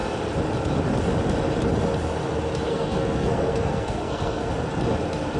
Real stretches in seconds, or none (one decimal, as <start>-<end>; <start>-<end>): 0.0-2.7; 4.5-5.4